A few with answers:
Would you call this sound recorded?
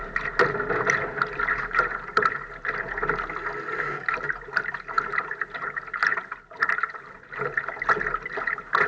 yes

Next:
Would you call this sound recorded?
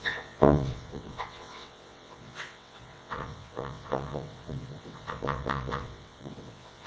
no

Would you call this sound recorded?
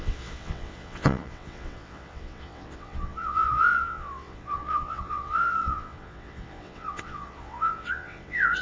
no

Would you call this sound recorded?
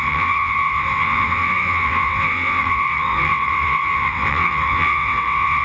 no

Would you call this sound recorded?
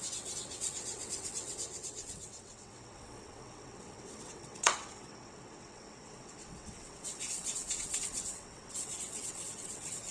no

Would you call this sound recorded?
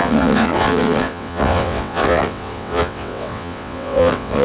no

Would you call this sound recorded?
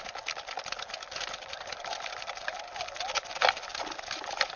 yes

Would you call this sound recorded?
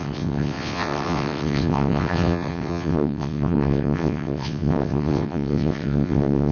no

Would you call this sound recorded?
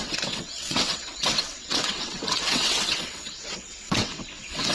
no